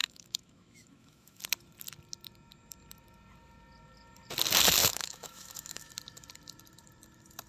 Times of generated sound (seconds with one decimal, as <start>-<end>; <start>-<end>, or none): 0.0-1.4; 4.8-5.9